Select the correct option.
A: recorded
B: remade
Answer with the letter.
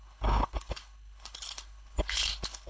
B